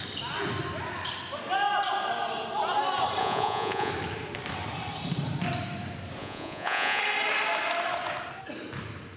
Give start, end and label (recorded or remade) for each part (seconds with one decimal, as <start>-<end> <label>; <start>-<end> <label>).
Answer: 0.0-3.2 recorded; 3.2-3.9 remade; 3.9-6.2 recorded; 6.2-7.0 remade; 7.0-9.2 recorded